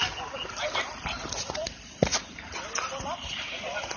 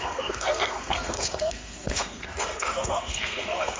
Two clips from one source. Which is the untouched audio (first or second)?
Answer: first